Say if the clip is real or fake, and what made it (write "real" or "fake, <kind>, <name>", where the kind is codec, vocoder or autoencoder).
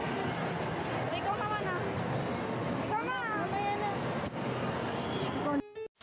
real